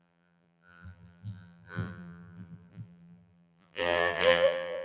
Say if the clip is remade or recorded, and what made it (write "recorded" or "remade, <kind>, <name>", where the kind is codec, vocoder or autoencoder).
remade, vocoder, BigVGAN v2